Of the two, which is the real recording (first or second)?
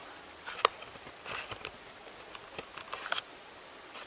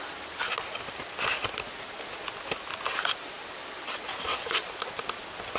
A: second